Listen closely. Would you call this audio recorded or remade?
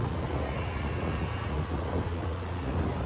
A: remade